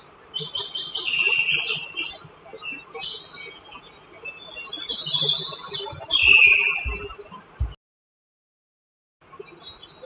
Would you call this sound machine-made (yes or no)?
no